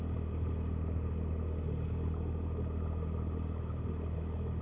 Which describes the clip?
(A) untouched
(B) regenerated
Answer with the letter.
A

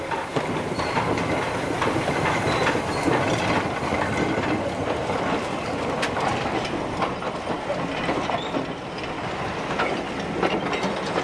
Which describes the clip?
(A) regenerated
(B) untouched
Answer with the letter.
B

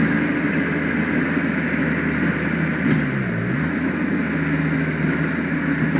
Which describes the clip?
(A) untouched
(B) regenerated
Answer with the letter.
A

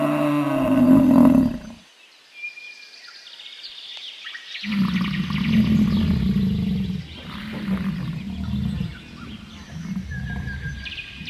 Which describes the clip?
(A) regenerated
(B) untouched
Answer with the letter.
B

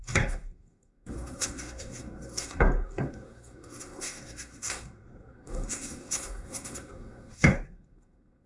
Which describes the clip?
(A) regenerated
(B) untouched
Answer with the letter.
A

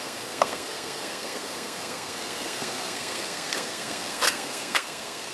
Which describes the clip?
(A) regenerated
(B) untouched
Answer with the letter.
A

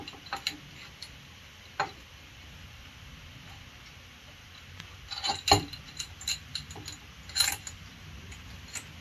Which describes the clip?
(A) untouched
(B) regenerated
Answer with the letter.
A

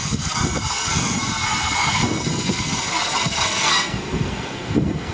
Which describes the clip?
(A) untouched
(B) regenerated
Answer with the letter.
B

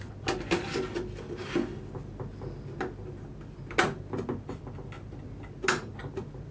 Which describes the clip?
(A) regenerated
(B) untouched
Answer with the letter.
B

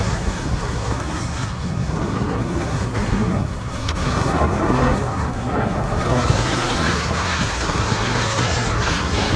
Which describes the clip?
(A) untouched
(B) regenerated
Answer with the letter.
B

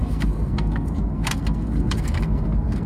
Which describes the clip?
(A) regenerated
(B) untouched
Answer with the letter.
A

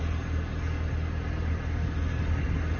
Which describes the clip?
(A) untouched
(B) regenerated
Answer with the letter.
A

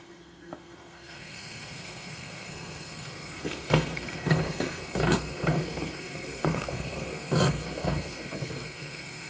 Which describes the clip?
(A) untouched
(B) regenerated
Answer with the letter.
B